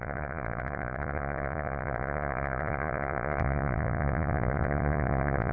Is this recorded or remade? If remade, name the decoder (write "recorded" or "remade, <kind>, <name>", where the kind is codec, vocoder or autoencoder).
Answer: remade, vocoder, Vocos